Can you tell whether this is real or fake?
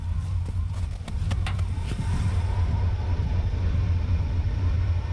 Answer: real